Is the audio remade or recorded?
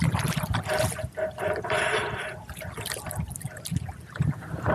recorded